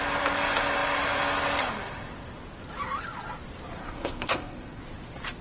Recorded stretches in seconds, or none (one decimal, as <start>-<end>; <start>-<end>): 0.0-3.8; 4.8-5.4